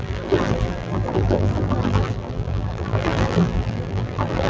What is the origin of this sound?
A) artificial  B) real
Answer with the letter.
A